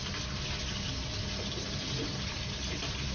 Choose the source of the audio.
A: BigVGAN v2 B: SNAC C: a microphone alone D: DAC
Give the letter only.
C